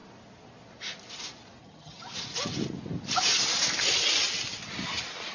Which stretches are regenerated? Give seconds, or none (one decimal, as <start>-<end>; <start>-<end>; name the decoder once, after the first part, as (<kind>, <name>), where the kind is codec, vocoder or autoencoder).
1.6-2.0 (vocoder, HiFi-GAN)